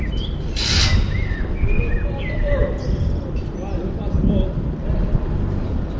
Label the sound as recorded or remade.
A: recorded